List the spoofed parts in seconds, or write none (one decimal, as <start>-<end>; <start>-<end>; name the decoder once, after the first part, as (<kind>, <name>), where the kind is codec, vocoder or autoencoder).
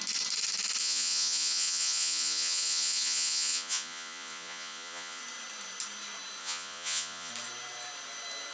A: 0.8-5.2 (vocoder, Vocos); 6.4-7.3